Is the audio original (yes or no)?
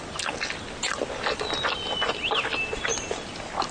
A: yes